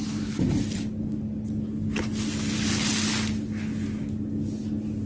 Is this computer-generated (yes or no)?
no